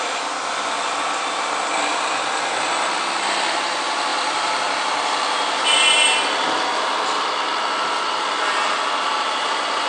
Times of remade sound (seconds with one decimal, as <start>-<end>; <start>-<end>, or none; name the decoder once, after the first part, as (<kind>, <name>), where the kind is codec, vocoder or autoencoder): 4.1-7.0 (vocoder, BigVGAN v2)